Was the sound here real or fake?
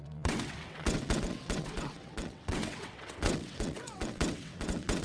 fake